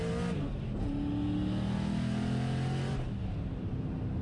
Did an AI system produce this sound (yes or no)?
no